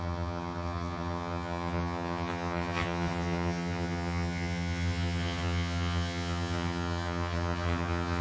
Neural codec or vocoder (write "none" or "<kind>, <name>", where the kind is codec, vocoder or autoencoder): vocoder, HiFi-GAN